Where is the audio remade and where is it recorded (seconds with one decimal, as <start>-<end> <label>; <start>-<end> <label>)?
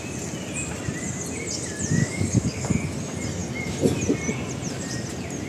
0.0-2.0 recorded; 2.0-2.7 remade; 2.7-5.5 recorded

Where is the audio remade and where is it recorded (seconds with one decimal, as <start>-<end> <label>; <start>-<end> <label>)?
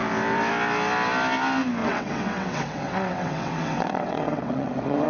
0.0-1.8 recorded; 1.8-5.1 remade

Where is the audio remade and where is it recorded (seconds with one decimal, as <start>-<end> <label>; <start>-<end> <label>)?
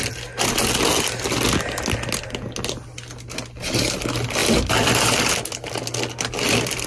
0.0-6.9 recorded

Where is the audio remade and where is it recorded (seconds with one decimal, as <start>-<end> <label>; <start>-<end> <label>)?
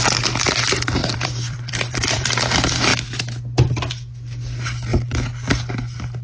0.0-1.0 recorded; 1.0-2.3 remade; 2.3-6.2 recorded